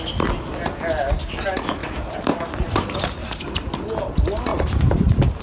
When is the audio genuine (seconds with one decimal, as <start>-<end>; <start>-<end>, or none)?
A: 0.0-1.8; 3.0-4.5